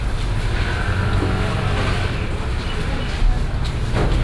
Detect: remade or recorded recorded